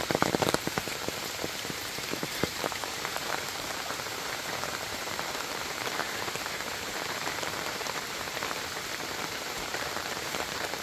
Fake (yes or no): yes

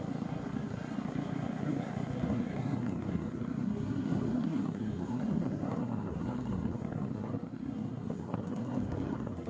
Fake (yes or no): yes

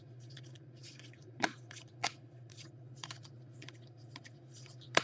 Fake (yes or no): yes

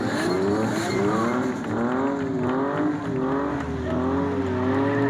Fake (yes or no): no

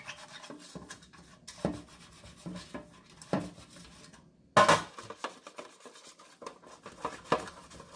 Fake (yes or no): no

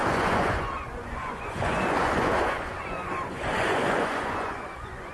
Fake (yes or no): yes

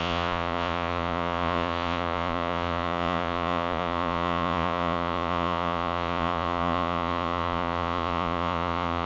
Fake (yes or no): yes